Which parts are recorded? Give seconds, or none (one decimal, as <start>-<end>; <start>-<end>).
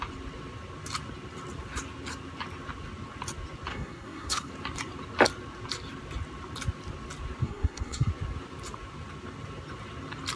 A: 0.0-3.7; 4.5-7.4; 8.1-10.4